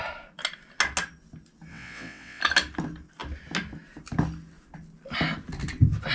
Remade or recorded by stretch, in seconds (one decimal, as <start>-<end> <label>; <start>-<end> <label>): 0.0-1.7 recorded; 1.7-2.4 remade; 2.4-6.1 recorded